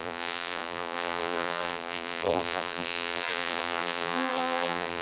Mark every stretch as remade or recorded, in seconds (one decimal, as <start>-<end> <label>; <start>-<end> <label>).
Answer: 0.0-5.0 remade